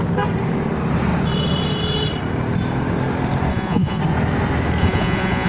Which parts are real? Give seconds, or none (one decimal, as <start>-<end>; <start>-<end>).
0.0-3.5; 4.0-4.8